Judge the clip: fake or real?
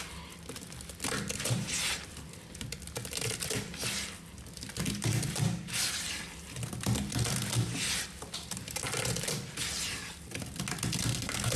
real